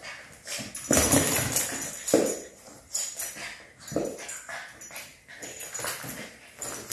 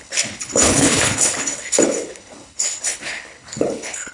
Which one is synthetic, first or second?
second